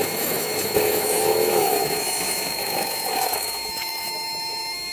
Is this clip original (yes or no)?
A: no